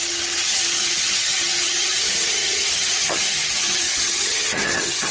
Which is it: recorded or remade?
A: remade